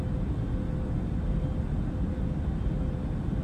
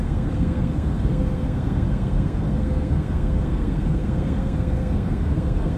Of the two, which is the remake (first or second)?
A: second